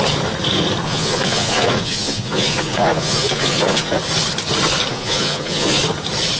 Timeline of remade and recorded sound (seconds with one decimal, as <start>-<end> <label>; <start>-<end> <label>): 0.0-0.8 recorded; 0.8-4.0 remade; 4.0-4.9 recorded; 4.9-5.8 remade; 5.8-6.4 recorded

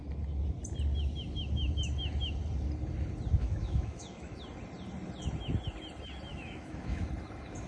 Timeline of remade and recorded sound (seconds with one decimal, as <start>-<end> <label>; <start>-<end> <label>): 0.0-3.4 recorded; 3.4-4.4 remade; 4.4-6.3 recorded; 6.3-7.1 remade; 7.1-7.7 recorded

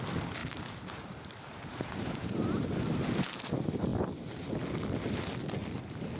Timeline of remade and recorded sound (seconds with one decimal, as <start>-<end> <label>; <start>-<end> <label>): 0.0-0.4 recorded; 0.4-3.0 remade; 3.0-6.2 recorded

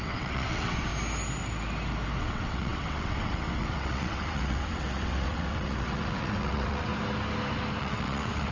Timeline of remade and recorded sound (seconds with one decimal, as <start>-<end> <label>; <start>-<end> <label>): 0.0-0.9 remade; 0.9-2.2 recorded; 2.2-6.9 remade; 6.9-7.8 recorded; 7.8-8.5 remade

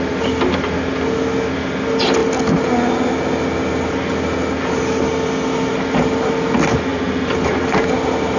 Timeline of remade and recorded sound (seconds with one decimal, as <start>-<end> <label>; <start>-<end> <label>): 0.0-8.4 recorded